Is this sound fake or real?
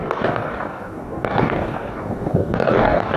fake